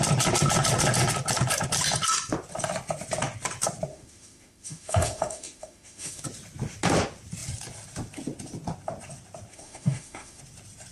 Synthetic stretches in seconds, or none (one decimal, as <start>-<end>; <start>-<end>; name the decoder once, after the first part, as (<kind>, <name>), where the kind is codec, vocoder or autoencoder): 3.9-6.2 (autoencoder, DAC-VAE); 9.5-10.4